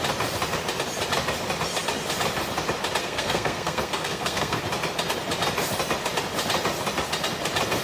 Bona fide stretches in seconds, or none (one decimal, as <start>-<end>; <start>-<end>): 0.0-3.0; 4.6-7.8